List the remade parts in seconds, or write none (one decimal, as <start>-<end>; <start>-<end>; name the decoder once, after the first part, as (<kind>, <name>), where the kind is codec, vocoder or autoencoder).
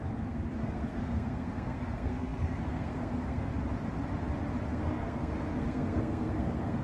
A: 0.0-3.5 (codec, SNAC); 4.7-6.8